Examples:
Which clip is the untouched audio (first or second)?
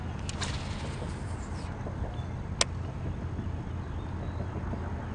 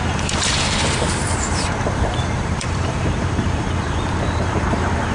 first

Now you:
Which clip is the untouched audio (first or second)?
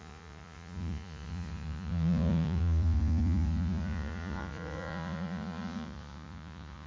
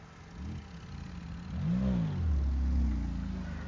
second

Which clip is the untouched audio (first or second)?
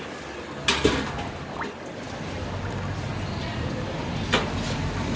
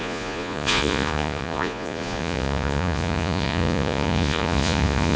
first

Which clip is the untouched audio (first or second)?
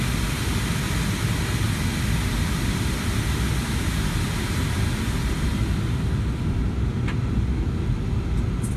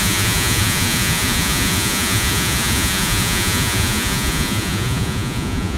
first